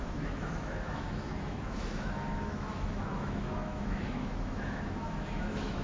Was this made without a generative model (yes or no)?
no